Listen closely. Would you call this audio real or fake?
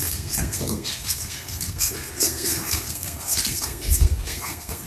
fake